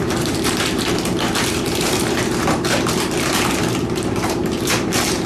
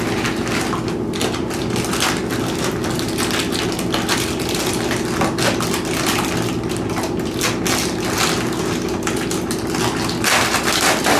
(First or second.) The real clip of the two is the second